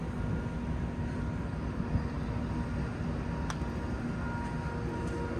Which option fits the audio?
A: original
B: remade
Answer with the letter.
A